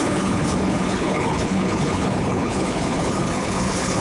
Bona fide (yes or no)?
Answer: no